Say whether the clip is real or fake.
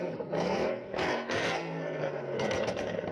fake